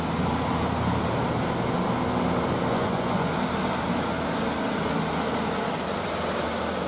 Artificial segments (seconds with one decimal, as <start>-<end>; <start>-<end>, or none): 2.7-3.3